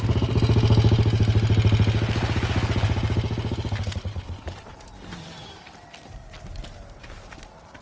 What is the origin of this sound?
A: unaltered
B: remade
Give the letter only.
A